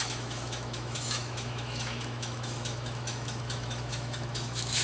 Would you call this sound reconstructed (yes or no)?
yes